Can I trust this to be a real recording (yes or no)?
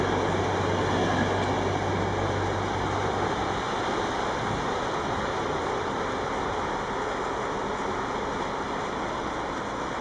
yes